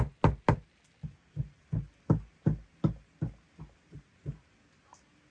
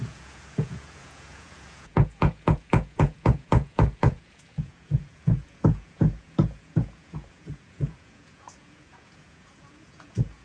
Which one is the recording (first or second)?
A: first